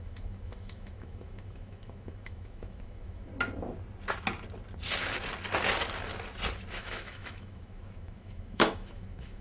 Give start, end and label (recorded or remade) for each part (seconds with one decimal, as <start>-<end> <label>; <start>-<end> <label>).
0.0-3.3 remade; 3.3-6.7 recorded; 6.7-9.4 remade